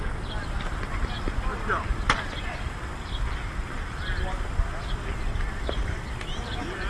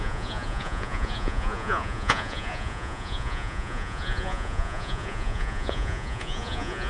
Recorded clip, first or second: first